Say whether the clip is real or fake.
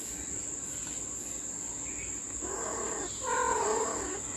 real